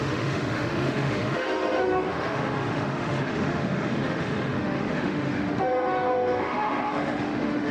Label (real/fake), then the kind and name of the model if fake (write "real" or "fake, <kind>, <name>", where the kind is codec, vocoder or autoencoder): fake, autoencoder, DAC-VAE